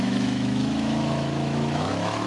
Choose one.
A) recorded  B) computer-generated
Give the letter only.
B